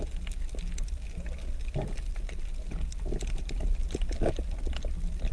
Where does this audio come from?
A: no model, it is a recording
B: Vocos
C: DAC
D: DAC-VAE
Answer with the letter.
A